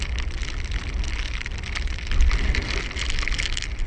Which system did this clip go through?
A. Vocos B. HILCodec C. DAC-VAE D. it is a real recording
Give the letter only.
D